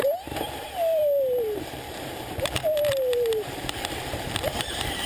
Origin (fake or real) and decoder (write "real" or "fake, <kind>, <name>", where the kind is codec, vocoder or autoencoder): fake, vocoder, BigVGAN v2